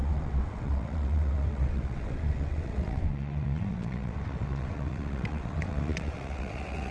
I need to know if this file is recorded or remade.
remade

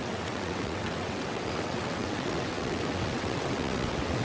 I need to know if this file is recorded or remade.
remade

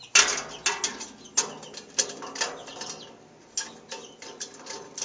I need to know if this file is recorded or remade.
recorded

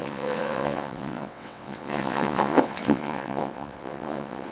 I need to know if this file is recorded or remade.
remade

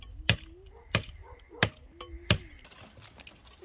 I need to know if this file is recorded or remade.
recorded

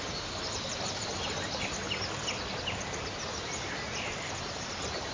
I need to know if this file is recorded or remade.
recorded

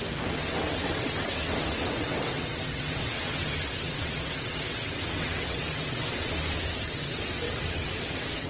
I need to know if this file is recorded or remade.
remade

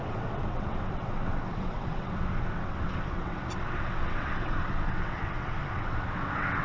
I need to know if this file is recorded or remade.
remade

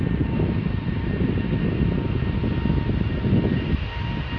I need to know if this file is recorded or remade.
recorded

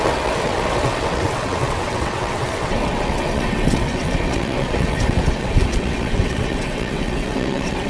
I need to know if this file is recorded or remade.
remade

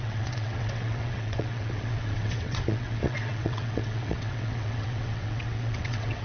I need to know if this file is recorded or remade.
remade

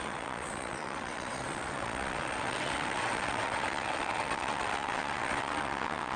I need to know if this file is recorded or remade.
remade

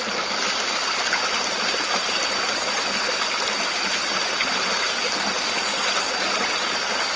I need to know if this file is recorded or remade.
recorded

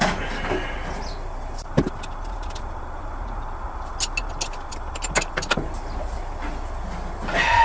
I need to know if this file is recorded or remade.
recorded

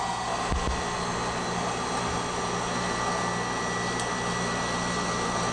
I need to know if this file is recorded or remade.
recorded